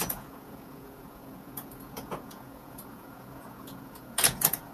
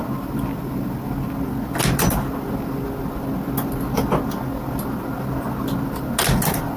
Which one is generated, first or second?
first